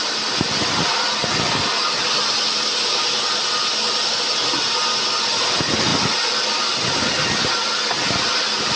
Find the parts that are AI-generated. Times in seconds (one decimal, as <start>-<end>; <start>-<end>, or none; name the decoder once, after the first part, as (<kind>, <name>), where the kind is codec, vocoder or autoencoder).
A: none